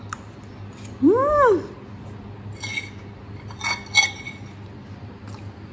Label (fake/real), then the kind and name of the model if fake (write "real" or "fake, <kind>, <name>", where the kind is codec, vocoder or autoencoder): real